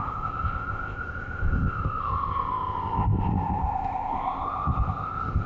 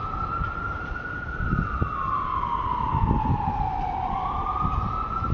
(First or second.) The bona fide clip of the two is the second